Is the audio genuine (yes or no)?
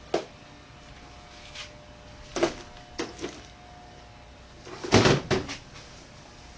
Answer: yes